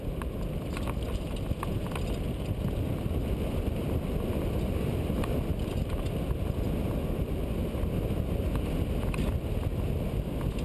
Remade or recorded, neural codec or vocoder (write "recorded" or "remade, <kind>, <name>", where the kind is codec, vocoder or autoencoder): recorded